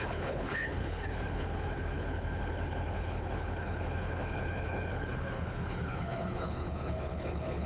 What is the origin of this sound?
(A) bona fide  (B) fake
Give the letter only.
B